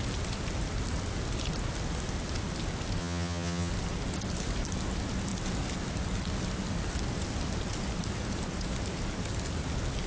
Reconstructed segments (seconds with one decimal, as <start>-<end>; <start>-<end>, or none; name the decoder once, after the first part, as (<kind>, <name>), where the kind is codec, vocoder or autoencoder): 3.0-3.7 (vocoder, HiFi-GAN)